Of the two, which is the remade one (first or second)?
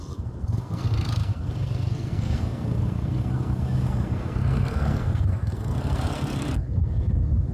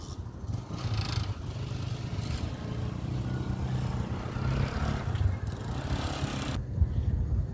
first